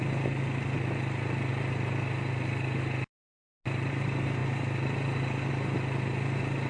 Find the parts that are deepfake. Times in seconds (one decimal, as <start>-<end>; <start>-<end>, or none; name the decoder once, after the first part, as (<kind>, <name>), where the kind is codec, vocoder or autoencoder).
none